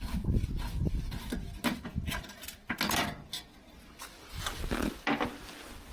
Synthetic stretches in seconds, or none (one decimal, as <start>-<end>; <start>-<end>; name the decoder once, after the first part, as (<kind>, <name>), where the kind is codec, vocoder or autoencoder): none

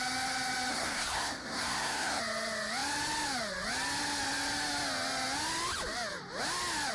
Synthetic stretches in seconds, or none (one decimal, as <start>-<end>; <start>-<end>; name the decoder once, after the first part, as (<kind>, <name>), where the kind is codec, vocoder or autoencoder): 0.7-2.2 (codec, SNAC)